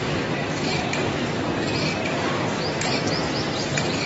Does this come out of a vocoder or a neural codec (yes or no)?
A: yes